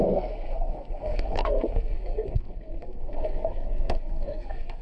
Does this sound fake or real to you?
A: fake